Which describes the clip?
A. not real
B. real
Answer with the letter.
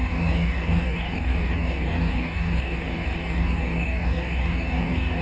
A